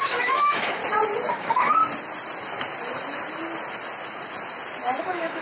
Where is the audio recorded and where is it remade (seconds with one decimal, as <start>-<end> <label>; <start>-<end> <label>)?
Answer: 0.0-0.8 remade; 0.8-1.3 recorded; 1.3-1.8 remade; 1.8-5.0 recorded; 5.0-5.4 remade